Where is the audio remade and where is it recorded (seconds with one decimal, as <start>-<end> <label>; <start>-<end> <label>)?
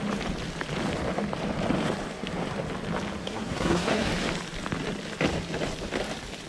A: 0.0-3.2 recorded; 3.2-4.1 remade; 4.1-6.5 recorded